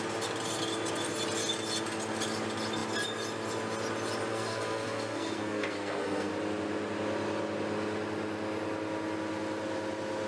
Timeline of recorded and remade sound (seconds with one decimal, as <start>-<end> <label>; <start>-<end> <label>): 0.0-4.3 recorded; 4.3-6.3 remade; 6.3-10.3 recorded